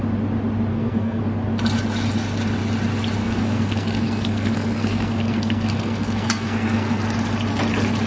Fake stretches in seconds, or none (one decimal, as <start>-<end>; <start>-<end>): 0.7-1.2; 3.2-7.0